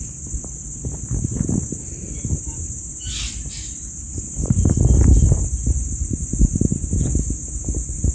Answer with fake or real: real